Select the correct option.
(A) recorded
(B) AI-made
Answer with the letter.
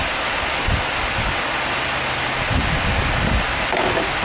A